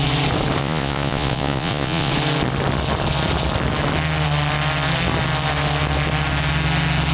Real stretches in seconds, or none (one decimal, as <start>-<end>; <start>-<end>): 0.0-0.6; 2.1-7.1